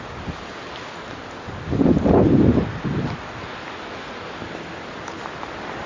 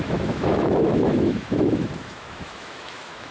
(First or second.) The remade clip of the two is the second